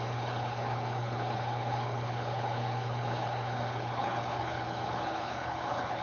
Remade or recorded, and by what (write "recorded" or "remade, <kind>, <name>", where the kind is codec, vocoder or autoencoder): remade, codec, HILCodec